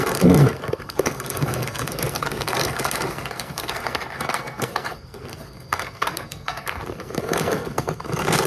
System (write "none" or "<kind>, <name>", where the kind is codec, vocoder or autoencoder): codec, SNAC